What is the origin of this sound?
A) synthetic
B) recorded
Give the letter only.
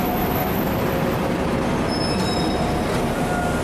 B